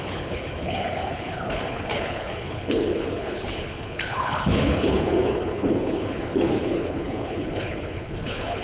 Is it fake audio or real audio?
fake